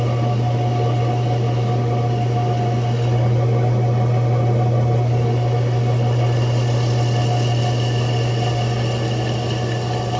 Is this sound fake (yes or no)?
no